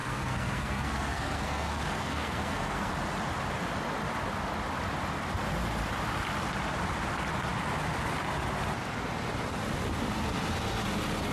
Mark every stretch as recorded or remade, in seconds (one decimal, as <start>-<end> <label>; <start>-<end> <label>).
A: 0.0-2.9 remade; 2.9-11.3 recorded